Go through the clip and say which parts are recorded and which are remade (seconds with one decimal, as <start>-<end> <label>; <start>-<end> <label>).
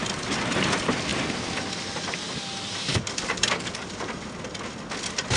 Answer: 0.0-2.9 recorded; 2.9-3.9 remade; 3.9-5.4 recorded